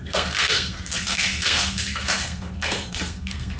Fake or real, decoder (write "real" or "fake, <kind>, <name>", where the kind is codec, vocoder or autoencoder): fake, codec, SNAC